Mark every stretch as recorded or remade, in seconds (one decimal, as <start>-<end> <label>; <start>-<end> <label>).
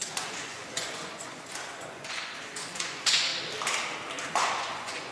0.0-3.3 remade; 3.3-4.3 recorded; 4.3-5.1 remade